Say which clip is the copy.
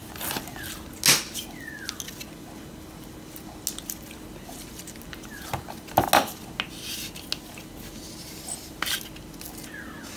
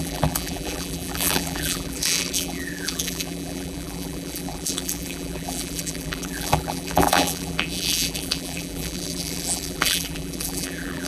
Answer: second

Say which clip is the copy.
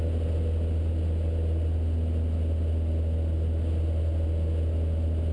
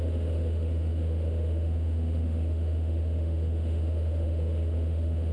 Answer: second